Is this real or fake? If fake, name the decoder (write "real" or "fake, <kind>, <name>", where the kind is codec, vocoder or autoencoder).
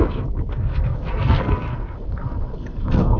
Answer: fake, codec, SNAC